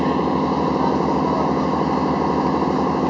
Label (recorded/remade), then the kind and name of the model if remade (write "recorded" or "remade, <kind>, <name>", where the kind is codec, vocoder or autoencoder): recorded